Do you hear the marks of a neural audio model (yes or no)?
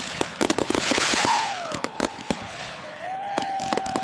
yes